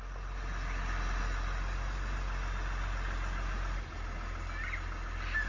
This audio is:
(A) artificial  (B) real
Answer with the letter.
B